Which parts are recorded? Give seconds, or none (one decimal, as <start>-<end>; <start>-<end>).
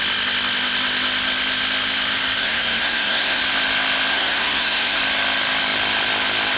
0.0-2.4; 3.4-4.1; 5.0-6.6